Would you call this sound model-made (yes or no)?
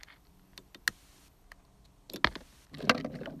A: no